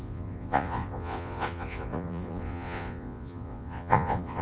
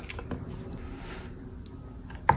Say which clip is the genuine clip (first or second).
second